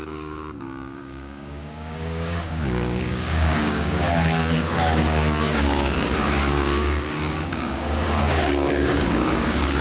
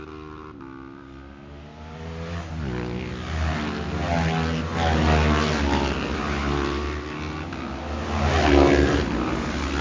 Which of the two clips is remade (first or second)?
first